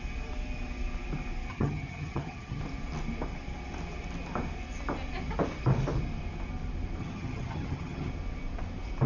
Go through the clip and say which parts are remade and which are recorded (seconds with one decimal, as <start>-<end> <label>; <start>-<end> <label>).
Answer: 0.0-1.5 recorded; 1.5-2.6 remade; 2.6-7.0 recorded; 7.0-8.1 remade; 8.1-9.1 recorded